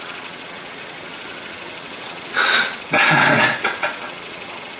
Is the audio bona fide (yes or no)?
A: no